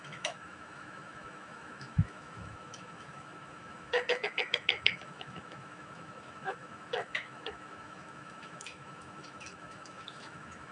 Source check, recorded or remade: remade